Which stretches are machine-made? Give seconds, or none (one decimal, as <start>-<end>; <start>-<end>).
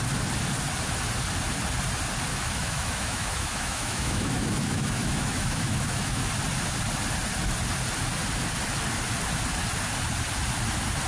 2.3-6.3